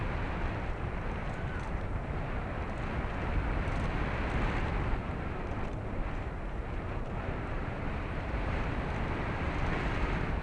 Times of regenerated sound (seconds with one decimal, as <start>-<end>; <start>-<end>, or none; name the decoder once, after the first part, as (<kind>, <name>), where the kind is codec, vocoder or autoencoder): 1.2-2.2 (vocoder, BigVGAN v2); 5.0-8.7